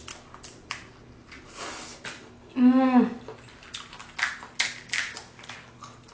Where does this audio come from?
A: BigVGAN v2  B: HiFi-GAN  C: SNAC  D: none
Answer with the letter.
D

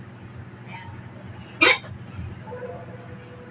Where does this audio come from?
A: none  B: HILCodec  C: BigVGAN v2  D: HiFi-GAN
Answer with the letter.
A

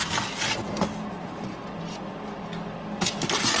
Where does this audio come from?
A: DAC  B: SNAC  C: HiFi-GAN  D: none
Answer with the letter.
D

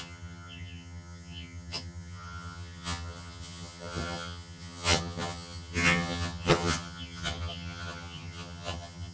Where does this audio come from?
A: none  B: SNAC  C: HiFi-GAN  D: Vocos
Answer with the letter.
C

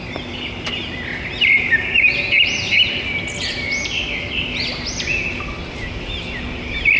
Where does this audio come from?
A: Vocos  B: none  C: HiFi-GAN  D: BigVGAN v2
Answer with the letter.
B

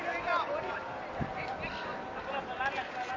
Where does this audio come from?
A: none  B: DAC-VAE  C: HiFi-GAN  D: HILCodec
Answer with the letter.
A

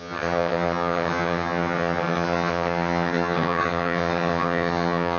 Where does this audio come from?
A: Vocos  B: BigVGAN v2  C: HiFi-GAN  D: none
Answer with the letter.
C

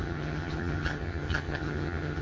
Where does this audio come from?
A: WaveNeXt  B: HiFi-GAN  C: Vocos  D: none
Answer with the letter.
B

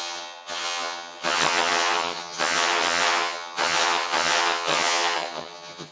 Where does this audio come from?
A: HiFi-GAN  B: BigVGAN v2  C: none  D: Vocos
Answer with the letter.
A